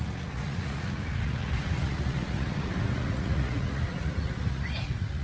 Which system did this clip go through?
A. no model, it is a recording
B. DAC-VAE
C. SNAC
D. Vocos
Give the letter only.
D